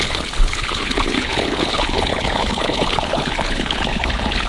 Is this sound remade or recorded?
remade